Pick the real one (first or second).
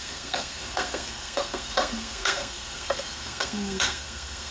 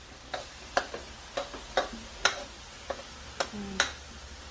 second